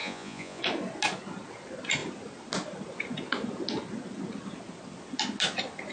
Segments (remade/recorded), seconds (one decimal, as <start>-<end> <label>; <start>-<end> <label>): 0.0-0.6 remade; 0.6-5.9 recorded